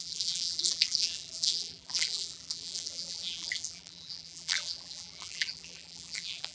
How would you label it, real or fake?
fake